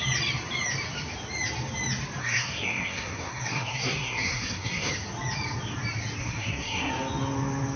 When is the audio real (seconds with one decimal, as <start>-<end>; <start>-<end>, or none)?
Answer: 0.0-2.2; 4.9-6.2; 6.9-7.8